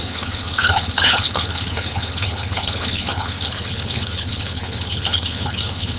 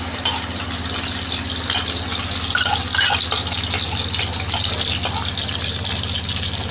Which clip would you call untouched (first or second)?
second